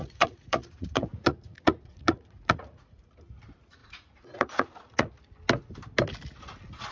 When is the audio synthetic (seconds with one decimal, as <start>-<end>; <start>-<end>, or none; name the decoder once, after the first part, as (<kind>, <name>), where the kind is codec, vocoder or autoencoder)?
0.0-3.1 (vocoder, Vocos); 3.8-5.1